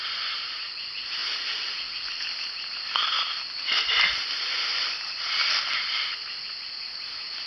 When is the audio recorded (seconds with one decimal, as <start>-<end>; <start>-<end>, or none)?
0.0-7.5